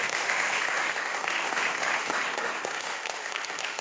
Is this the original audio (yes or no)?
no